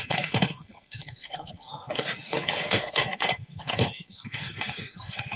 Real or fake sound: fake